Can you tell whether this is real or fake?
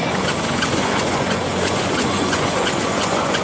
fake